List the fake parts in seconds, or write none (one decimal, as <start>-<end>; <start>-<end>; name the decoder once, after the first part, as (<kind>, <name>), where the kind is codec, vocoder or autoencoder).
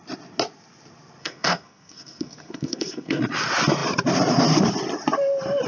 1.2-3.2 (codec, SNAC)